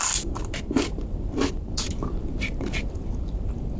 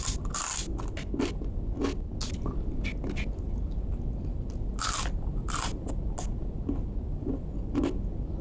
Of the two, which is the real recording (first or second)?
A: second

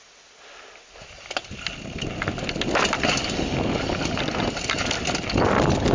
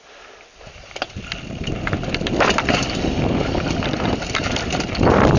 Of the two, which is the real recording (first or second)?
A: first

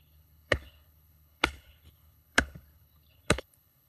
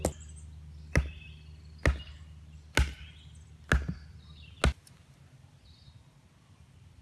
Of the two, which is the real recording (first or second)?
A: second